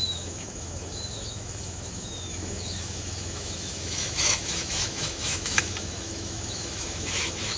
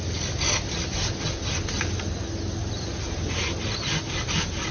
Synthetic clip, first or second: first